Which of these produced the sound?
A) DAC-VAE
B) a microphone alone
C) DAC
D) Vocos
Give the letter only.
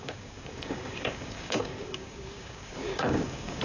C